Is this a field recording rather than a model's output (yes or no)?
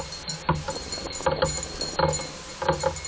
yes